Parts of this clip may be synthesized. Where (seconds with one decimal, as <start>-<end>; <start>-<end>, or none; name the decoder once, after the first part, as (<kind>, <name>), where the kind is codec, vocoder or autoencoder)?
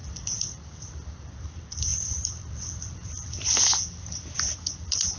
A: none